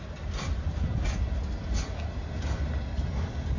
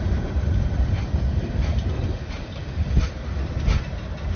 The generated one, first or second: second